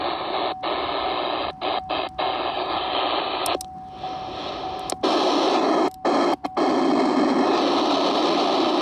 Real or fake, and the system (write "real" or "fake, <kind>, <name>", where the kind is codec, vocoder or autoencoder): real